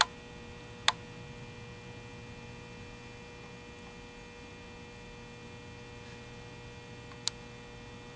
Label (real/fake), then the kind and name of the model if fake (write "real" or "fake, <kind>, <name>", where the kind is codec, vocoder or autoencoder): real